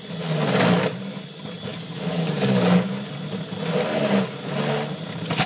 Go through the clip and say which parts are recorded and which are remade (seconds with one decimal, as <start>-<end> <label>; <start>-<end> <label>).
0.0-1.7 recorded; 1.7-2.9 remade; 2.9-5.5 recorded